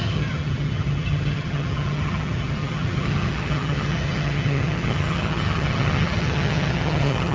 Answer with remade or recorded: remade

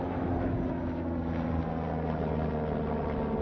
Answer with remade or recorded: recorded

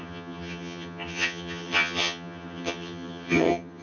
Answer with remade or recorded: remade